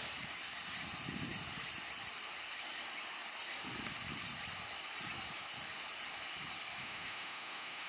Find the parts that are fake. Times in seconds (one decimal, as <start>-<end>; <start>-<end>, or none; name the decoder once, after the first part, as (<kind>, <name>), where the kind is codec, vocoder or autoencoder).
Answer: 6.8-7.9 (autoencoder, DAC-VAE)